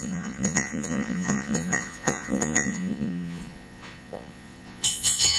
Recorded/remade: remade